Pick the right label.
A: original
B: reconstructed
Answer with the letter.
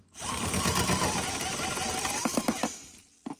A